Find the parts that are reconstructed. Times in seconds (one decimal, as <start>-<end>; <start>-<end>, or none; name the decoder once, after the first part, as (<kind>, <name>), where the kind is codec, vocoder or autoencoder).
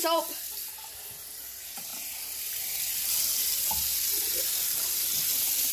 none